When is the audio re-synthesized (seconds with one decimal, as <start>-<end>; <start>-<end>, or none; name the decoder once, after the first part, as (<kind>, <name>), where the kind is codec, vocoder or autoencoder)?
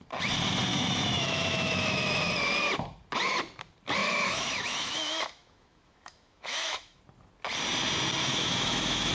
0.7-2.3 (autoencoder, DAC-VAE); 4.0-7.0; 8.2-9.1